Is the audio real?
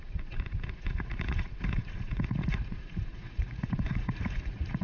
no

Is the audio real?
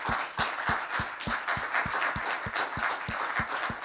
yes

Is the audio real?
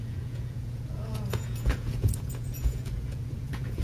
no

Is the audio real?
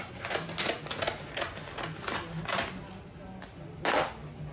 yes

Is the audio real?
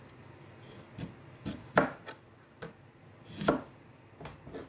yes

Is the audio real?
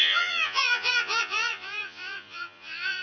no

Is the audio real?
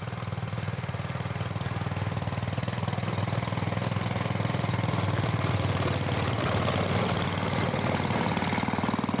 yes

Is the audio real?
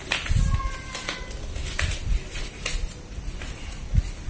yes